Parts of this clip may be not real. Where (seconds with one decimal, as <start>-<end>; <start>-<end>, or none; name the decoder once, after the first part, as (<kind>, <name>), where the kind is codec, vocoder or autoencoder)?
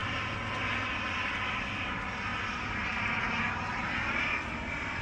none